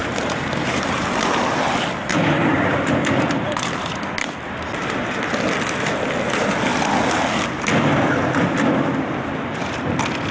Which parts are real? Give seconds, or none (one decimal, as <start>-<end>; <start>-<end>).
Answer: 1.1-2.1; 3.8-10.3